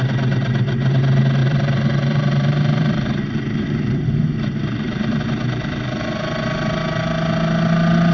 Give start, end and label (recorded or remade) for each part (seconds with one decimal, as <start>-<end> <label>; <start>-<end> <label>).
0.0-1.4 recorded; 1.4-5.2 remade; 5.2-8.1 recorded